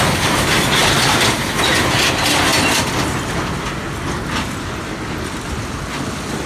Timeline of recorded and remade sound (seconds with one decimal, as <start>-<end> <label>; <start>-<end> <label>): 0.0-6.5 recorded